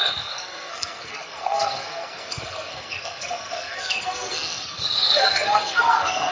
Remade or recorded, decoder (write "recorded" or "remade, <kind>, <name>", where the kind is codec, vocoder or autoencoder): remade, codec, SNAC